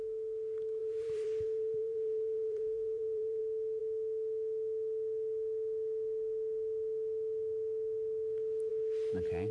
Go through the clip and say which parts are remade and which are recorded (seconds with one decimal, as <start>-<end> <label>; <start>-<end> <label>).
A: 0.0-0.8 recorded; 0.8-3.4 remade; 3.4-9.5 recorded